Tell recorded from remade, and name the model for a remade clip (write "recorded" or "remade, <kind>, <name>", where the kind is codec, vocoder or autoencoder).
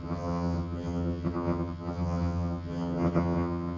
remade, vocoder, HiFi-GAN